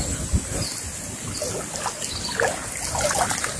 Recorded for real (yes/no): yes